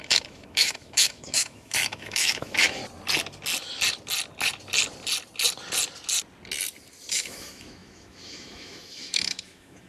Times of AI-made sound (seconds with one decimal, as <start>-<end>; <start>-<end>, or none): 0.0-2.8; 7.1-9.9